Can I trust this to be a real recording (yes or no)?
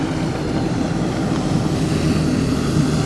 no